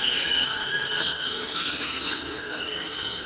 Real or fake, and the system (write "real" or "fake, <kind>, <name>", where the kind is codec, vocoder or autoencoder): fake, codec, SNAC